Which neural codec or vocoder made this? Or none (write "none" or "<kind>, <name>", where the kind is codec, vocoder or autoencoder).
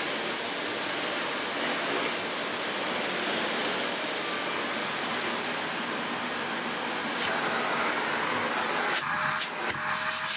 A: none